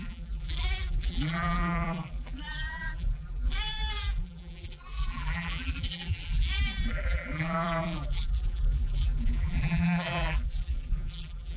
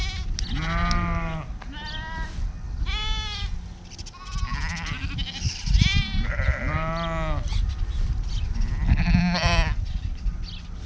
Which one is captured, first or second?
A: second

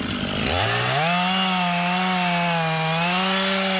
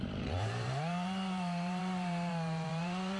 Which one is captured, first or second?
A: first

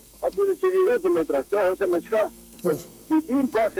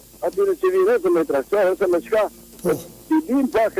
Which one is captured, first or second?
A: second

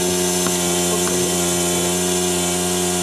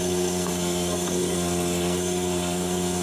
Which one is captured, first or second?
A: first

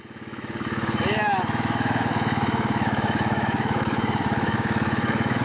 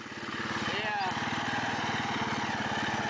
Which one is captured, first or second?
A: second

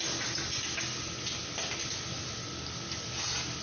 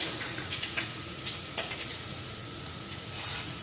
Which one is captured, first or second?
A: first